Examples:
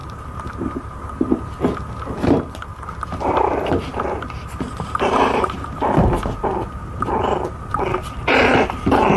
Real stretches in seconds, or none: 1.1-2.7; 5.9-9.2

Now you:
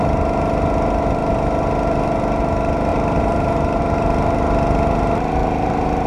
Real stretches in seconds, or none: 0.0-2.9; 3.8-5.4

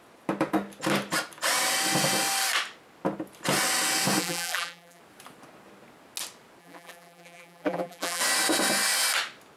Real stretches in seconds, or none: 0.0-4.2; 5.0-6.6; 8.2-9.6

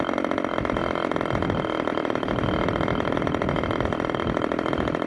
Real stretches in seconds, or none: 0.0-1.9

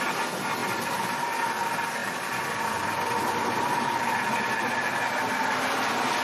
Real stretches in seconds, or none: 0.0-0.6; 1.2-2.0; 4.3-6.2

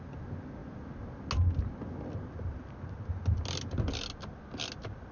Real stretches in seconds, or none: 0.0-5.1